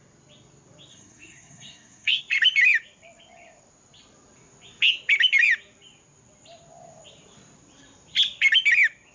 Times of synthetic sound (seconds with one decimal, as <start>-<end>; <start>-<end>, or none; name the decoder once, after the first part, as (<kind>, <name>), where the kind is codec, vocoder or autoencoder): 0.9-2.2 (codec, SNAC)